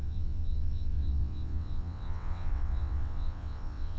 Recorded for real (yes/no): no